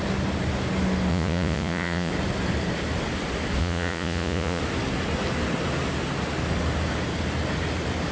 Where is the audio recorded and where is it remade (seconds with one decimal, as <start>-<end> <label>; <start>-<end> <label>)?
0.0-1.1 recorded; 1.1-2.1 remade; 2.1-3.6 recorded; 3.6-4.6 remade; 4.6-8.1 recorded